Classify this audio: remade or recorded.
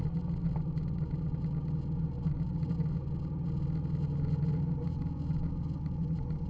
recorded